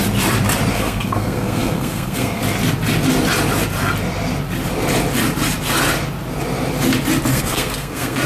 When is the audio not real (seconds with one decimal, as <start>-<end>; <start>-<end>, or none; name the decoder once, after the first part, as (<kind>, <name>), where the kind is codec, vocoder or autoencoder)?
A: 0.7-2.4 (codec, SNAC); 7.3-8.3